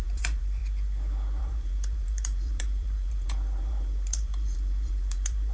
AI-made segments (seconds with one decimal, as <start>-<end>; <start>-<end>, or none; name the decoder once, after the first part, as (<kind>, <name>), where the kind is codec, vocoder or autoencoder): 0.0-0.6 (vocoder, BigVGAN v2); 1.4-5.5